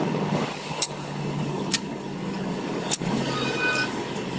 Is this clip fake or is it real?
fake